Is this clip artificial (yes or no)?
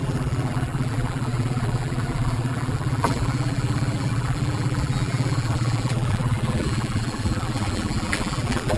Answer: yes